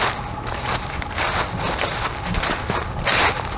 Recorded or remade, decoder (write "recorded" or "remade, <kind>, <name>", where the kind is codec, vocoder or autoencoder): recorded